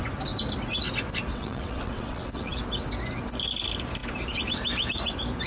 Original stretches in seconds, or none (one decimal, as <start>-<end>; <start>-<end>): 0.0-1.3; 2.6-5.5